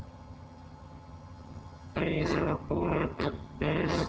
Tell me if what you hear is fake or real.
fake